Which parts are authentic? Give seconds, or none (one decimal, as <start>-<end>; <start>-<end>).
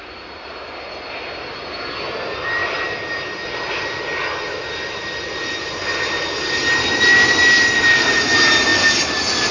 0.0-8.7